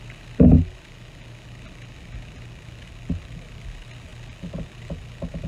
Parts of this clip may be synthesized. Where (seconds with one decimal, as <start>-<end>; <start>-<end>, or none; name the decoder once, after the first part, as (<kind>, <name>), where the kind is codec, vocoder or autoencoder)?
none